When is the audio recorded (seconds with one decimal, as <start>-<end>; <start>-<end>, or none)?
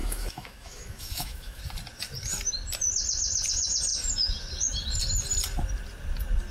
1.6-6.5